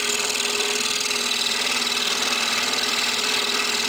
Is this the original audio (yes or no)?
no